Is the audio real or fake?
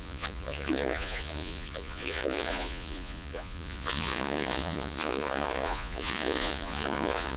fake